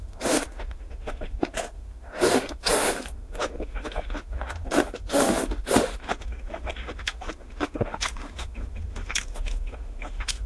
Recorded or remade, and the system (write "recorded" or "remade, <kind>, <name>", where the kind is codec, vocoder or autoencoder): remade, autoencoder, DAC-VAE